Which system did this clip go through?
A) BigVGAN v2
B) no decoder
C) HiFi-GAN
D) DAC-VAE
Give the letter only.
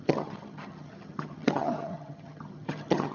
C